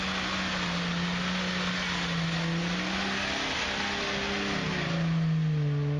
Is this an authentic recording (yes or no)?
yes